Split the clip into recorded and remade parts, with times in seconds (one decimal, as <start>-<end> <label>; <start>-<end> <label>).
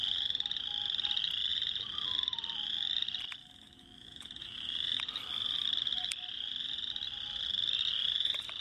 0.0-3.4 recorded; 3.4-5.0 remade; 5.0-8.6 recorded